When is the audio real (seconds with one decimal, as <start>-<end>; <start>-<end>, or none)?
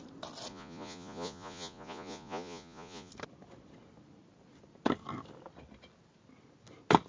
0.0-0.5; 3.1-7.1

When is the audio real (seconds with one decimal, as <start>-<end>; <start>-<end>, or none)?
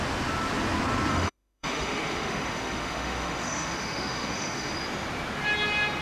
0.0-1.1; 4.7-6.0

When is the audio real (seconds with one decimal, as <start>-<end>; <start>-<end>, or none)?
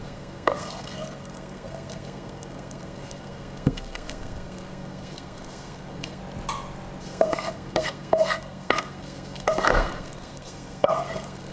6.2-7.0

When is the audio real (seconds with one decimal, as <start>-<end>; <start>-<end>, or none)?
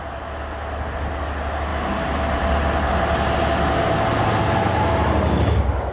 0.0-5.9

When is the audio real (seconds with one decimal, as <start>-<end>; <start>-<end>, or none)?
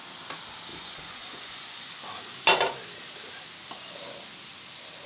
0.0-0.7; 1.9-5.1